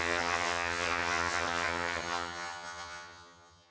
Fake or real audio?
fake